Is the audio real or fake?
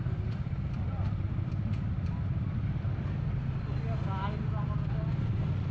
real